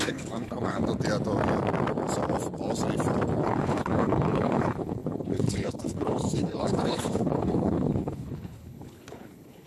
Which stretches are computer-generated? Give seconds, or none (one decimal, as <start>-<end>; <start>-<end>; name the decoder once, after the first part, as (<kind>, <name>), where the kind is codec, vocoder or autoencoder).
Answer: 0.0-0.8 (codec, HILCodec); 3.4-9.7